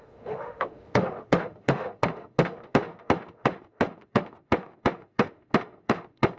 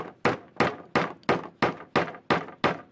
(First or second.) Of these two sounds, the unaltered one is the second